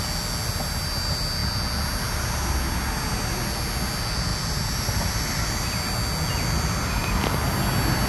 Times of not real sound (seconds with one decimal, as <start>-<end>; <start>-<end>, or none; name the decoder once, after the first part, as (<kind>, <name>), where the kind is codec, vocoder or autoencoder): none